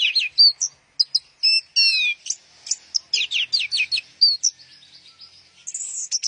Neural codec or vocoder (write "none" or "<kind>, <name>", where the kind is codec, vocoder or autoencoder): none